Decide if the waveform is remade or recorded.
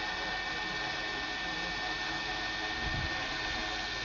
recorded